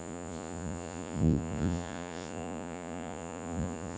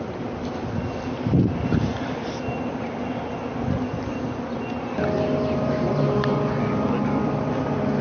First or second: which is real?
second